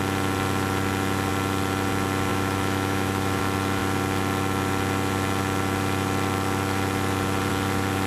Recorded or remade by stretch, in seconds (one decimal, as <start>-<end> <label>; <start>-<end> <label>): 0.0-2.3 recorded; 2.3-3.4 remade; 3.4-8.1 recorded